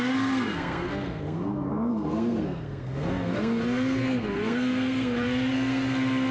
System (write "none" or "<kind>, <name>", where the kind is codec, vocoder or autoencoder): codec, SNAC